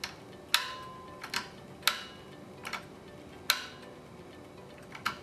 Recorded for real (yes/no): yes